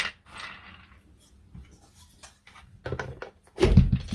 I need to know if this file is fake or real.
real